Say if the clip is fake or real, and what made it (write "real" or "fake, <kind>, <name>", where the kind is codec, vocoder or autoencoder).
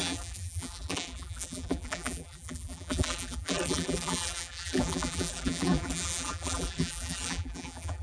fake, vocoder, BigVGAN v2